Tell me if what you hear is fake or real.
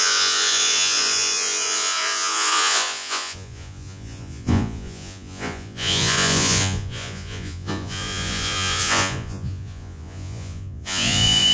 fake